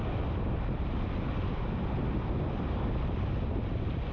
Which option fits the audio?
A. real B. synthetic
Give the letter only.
A